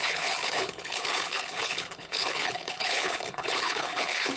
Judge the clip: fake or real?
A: fake